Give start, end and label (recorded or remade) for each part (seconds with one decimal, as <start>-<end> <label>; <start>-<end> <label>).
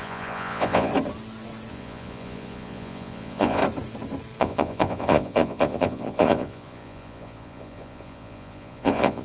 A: 0.0-0.9 remade; 0.9-1.7 recorded; 1.7-3.6 remade; 3.6-4.4 recorded; 4.4-9.2 remade